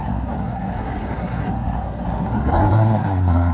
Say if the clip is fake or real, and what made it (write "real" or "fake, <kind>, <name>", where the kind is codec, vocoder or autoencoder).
fake, codec, SNAC